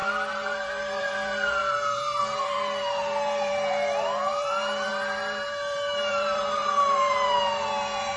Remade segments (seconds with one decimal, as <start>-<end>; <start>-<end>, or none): 0.0-8.2